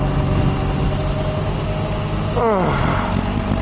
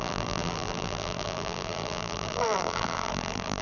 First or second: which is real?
first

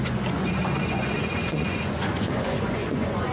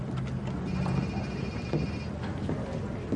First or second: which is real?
second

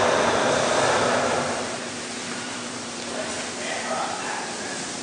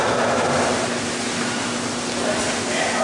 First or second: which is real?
second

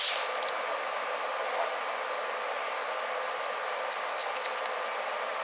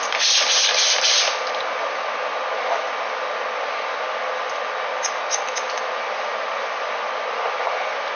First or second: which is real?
second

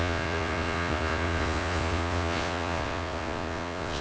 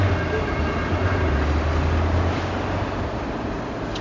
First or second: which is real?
second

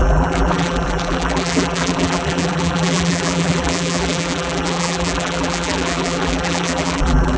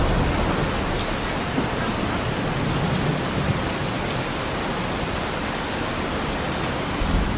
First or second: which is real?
second